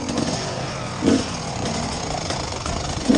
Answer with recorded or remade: remade